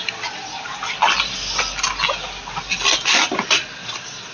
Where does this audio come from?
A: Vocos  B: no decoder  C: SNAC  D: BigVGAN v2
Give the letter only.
B